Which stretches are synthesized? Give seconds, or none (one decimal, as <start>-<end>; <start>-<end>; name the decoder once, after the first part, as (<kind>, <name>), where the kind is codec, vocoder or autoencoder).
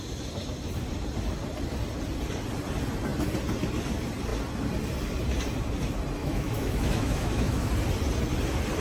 6.2-7.7 (autoencoder, DAC-VAE)